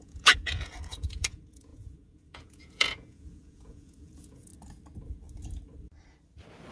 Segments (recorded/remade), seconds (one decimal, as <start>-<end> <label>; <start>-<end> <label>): 0.0-4.5 remade; 4.5-6.7 recorded